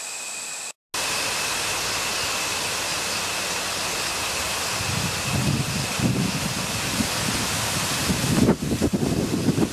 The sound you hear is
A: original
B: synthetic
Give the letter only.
A